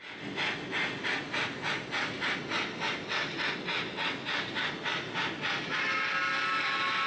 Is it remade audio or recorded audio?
recorded